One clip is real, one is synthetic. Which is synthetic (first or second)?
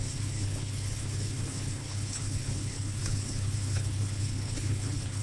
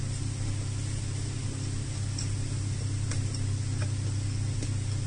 first